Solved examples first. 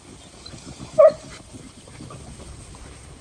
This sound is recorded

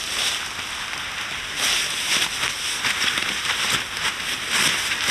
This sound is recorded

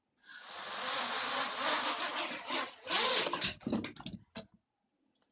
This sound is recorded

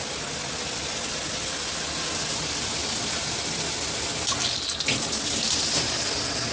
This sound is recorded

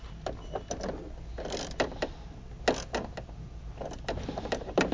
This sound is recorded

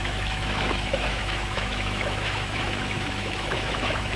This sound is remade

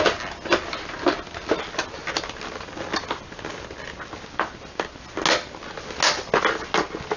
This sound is recorded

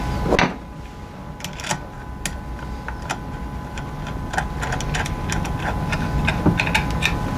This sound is recorded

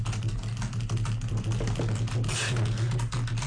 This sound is recorded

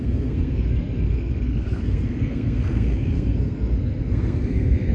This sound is remade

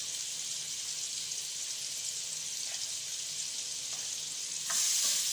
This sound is recorded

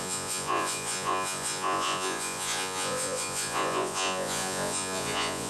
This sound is remade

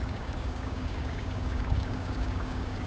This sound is remade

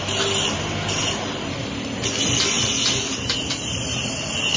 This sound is recorded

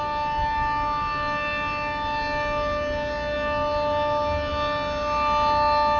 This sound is recorded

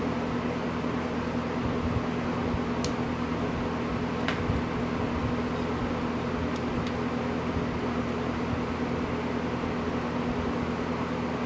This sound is recorded